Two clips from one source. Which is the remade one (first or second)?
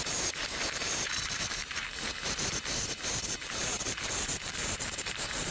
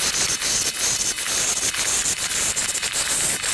first